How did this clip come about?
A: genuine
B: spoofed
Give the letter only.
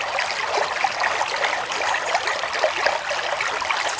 A